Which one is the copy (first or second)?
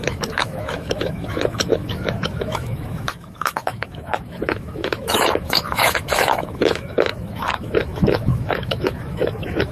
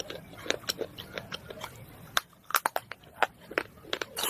first